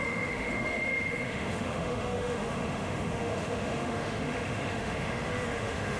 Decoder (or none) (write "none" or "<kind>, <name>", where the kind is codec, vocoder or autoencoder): autoencoder, DAC-VAE